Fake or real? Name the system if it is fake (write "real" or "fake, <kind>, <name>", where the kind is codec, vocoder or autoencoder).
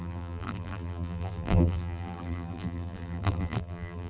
fake, vocoder, BigVGAN v2